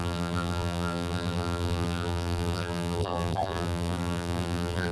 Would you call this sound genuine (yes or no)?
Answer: no